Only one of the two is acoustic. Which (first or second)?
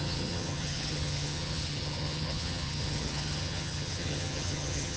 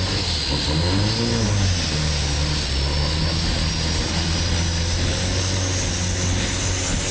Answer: second